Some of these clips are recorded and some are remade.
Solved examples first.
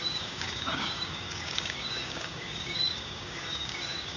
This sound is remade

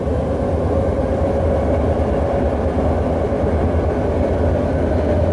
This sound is recorded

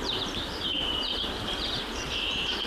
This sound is remade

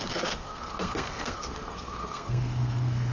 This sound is remade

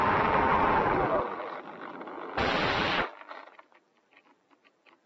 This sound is remade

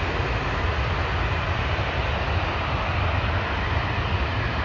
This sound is recorded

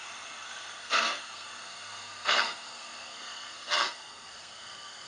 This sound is remade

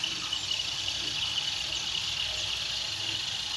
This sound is recorded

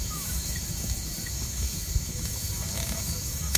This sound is remade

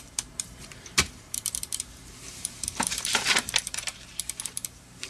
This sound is remade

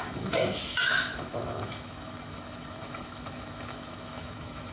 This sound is remade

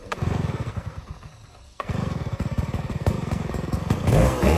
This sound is remade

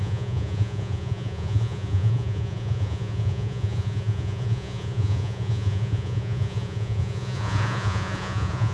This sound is remade